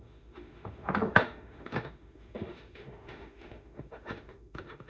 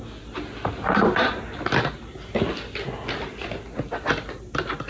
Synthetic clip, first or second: first